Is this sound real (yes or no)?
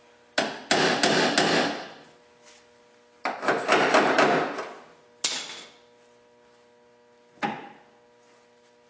yes